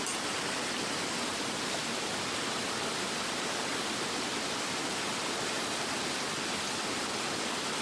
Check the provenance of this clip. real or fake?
real